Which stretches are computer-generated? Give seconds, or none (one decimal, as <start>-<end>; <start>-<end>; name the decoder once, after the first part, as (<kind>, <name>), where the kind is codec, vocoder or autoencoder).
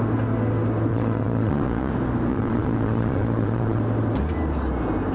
0.9-1.9 (vocoder, Vocos); 2.3-3.8